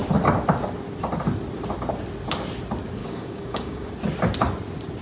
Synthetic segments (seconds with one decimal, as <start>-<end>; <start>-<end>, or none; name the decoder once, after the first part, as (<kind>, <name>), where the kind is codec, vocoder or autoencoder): 3.0-3.9 (codec, DAC)